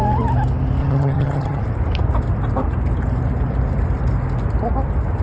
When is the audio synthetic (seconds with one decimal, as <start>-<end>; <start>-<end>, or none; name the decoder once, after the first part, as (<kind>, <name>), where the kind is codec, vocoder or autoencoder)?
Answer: 0.8-1.6 (vocoder, HiFi-GAN)